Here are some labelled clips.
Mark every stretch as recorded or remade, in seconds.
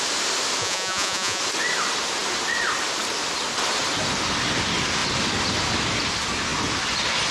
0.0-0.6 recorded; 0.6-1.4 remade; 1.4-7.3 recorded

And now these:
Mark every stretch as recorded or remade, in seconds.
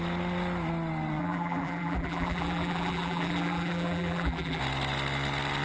0.0-1.2 recorded; 1.2-4.6 remade; 4.6-5.6 recorded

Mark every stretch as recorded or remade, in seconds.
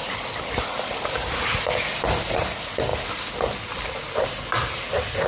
0.0-5.3 recorded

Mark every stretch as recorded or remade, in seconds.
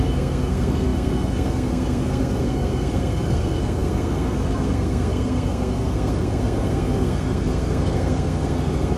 0.0-9.0 remade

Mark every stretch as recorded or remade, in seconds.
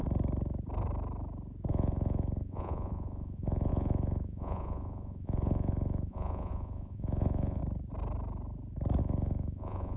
0.0-1.7 recorded; 1.7-7.6 remade; 7.6-9.0 recorded; 9.0-10.0 remade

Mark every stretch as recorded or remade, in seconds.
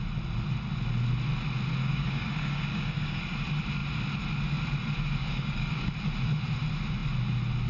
0.0-1.8 recorded; 1.8-3.2 remade; 3.2-5.2 recorded; 5.2-5.9 remade; 5.9-7.7 recorded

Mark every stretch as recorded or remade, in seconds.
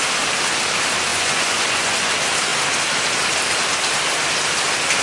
0.0-1.1 recorded; 1.1-2.1 remade; 2.1-5.0 recorded